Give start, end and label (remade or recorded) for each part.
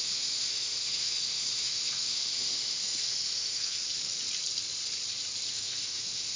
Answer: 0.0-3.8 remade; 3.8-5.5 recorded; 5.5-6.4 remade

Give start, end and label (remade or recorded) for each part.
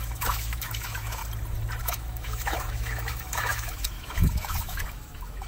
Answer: 0.0-1.2 remade; 1.2-1.8 recorded; 1.8-5.5 remade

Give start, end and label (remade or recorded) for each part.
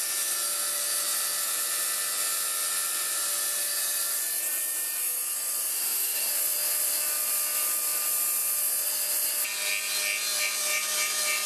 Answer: 0.0-5.7 recorded; 5.7-6.3 remade; 6.3-11.5 recorded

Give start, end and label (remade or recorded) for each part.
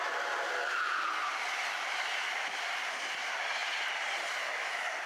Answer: 0.0-5.1 recorded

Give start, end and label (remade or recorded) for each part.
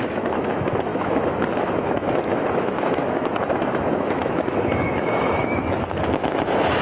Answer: 0.0-6.8 remade